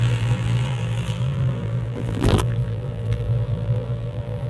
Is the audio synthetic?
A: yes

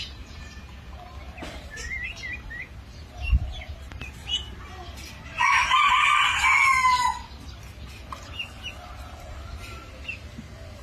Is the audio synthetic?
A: no